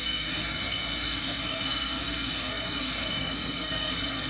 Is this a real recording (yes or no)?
no